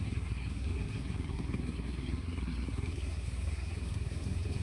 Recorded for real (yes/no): no